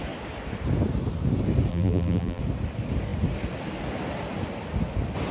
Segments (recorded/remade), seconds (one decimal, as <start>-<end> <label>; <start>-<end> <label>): 0.0-1.7 recorded; 1.7-2.4 remade; 2.4-5.3 recorded